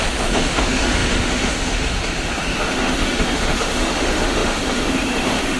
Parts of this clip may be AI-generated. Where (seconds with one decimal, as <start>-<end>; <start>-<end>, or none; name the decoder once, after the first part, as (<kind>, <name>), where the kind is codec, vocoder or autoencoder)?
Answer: 0.0-5.6 (autoencoder, DAC-VAE)